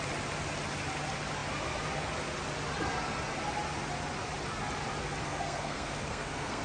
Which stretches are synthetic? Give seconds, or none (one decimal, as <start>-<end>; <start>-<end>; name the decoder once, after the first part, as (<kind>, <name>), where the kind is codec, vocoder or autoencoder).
5.2-6.6 (codec, SNAC)